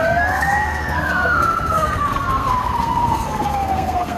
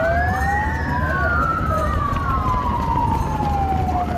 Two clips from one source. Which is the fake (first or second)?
first